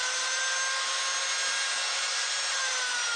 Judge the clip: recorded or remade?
recorded